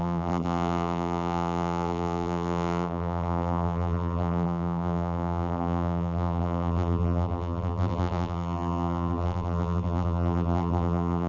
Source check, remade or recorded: remade